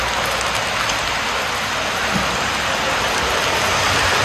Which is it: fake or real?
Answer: real